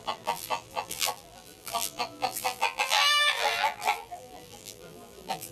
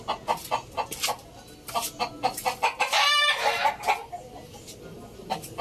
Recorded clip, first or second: second